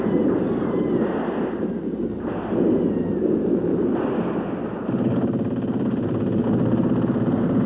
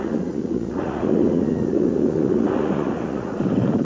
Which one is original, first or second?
first